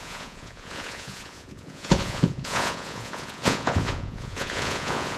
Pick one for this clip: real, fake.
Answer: fake